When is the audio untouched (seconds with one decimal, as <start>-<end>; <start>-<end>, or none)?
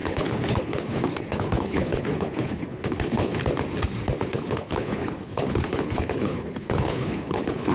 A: 3.4-4.3